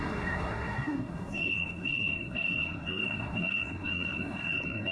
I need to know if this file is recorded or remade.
remade